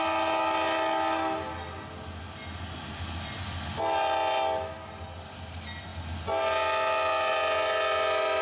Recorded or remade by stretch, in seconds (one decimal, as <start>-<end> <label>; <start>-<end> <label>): 0.0-8.4 recorded